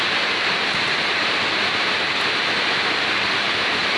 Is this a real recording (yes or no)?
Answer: no